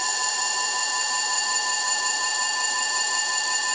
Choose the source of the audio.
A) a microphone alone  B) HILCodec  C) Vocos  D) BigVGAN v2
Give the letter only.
D